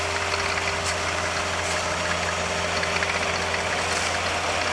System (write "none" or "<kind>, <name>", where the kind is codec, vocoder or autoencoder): none